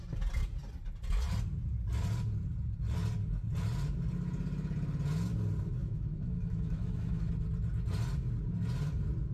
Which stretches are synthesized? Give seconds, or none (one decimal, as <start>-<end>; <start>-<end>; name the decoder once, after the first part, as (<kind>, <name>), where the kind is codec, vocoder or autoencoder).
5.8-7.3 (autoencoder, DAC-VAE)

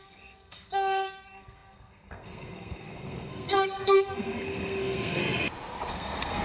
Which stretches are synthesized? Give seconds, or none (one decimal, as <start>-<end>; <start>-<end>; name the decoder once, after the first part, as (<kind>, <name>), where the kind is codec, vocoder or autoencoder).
0.0-5.2 (codec, SNAC); 5.9-6.4

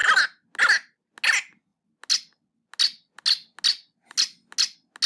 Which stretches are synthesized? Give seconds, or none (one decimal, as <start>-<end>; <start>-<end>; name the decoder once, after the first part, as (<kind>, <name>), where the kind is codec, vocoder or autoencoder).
none